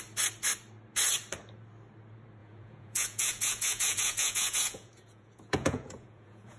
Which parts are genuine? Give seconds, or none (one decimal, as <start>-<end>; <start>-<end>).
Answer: 0.0-2.4